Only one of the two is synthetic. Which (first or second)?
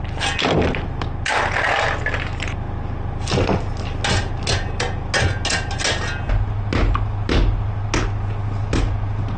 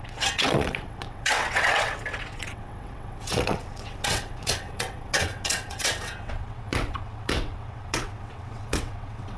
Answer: second